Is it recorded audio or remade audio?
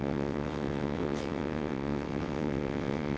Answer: remade